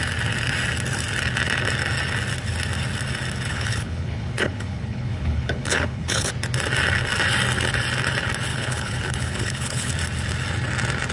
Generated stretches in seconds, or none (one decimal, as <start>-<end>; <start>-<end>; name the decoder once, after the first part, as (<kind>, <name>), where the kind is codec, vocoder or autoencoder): 3.5-6.3 (codec, HILCodec); 8.5-9.9